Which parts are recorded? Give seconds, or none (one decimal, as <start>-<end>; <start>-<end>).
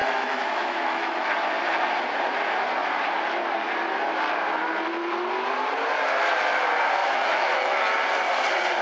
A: 1.3-7.0; 7.8-8.8